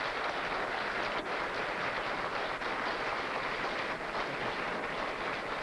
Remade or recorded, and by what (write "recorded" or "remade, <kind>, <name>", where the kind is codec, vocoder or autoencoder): recorded